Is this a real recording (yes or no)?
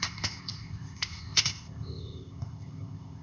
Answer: no